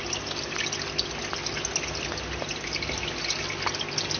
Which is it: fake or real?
real